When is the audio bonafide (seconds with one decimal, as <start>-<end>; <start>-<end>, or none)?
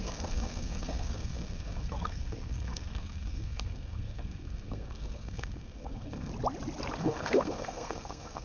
6.3-7.0